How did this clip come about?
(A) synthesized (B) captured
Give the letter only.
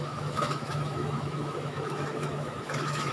A